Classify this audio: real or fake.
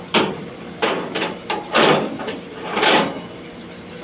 fake